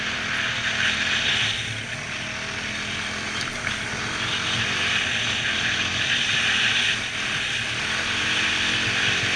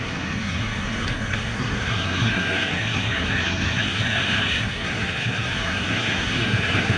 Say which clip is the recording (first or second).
first